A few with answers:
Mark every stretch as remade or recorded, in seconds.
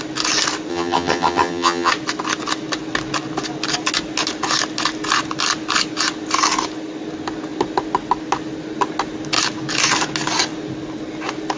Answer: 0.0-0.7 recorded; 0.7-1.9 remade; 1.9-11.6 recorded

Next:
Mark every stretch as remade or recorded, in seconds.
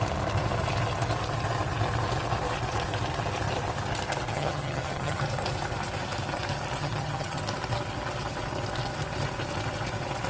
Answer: 0.0-4.3 recorded; 4.3-5.2 remade; 5.2-6.8 recorded; 6.8-7.4 remade; 7.4-10.3 recorded